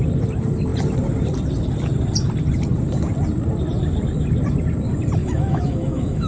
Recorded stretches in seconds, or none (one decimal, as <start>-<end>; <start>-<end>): 0.0-5.2